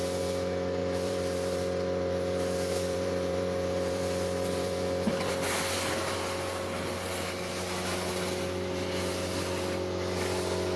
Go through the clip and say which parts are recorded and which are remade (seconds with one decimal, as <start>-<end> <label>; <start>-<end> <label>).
0.0-0.8 recorded; 0.8-5.3 remade; 5.3-10.8 recorded